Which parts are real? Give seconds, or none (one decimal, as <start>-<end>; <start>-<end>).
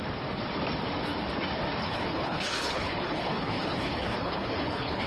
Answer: 0.0-1.8